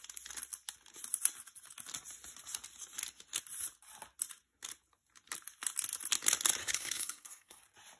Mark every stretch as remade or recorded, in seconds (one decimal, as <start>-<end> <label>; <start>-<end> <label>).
0.0-6.6 recorded; 6.6-7.6 remade; 7.6-8.0 recorded